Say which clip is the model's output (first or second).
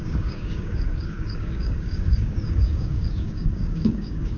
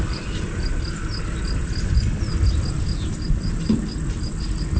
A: first